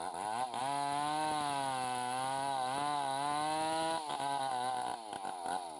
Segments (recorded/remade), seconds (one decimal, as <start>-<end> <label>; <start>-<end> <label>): 0.0-5.8 recorded